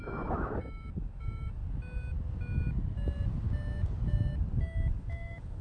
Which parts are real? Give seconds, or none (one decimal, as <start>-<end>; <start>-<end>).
1.6-5.0